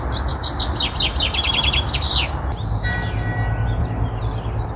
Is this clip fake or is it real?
real